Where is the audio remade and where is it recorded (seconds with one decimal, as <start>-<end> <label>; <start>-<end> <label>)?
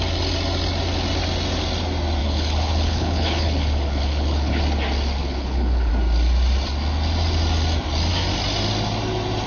0.0-2.2 recorded; 2.2-4.6 remade; 4.6-5.2 recorded; 5.2-5.9 remade; 5.9-9.5 recorded